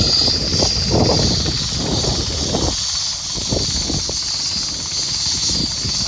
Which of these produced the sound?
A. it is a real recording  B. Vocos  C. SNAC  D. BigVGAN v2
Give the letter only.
A